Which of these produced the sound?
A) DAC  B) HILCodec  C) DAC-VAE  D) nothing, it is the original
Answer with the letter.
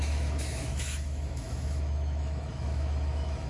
C